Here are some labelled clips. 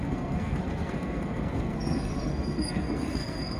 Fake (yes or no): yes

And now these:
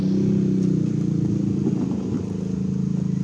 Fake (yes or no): no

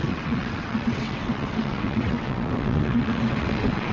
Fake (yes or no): yes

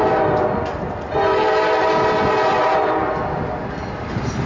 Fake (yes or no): no